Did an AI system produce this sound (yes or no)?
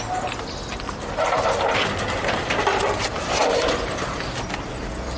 no